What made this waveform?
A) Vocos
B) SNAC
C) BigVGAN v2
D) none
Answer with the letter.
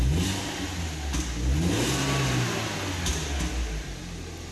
D